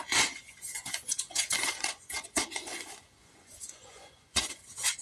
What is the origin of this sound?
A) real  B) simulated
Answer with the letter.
B